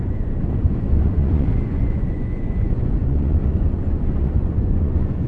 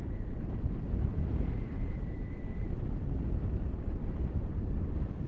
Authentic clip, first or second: second